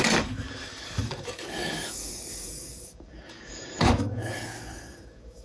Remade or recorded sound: remade